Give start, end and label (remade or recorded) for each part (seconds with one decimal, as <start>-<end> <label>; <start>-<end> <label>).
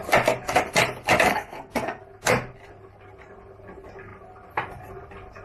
0.0-1.3 recorded; 1.3-2.0 remade; 2.0-5.4 recorded